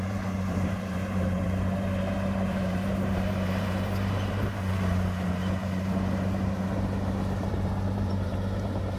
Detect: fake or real fake